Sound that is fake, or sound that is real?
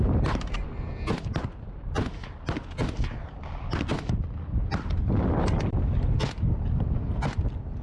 real